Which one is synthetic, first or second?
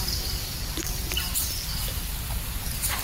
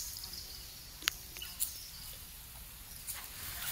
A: first